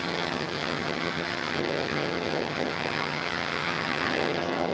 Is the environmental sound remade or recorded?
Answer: remade